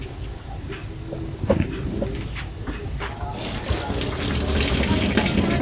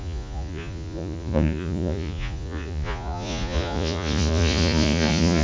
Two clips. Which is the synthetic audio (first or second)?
second